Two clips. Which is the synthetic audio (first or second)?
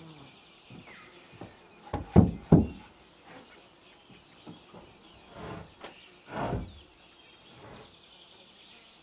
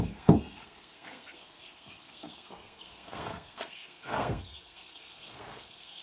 second